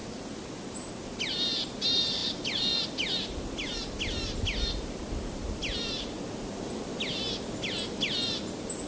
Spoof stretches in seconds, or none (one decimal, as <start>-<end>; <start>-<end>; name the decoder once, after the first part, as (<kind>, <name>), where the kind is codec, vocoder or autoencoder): none